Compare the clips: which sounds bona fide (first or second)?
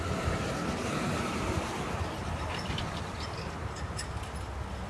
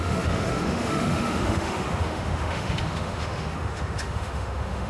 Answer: first